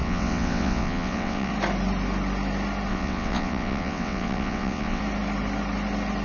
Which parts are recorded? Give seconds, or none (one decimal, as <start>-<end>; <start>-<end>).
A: 1.5-2.9; 5.0-6.2